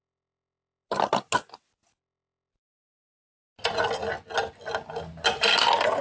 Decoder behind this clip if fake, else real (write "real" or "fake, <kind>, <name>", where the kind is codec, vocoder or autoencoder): real